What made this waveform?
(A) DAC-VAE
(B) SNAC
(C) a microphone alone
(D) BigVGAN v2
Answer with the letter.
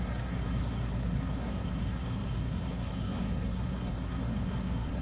B